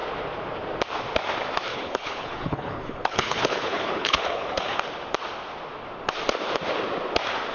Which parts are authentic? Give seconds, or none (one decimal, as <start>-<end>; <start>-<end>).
0.0-1.7; 4.8-7.5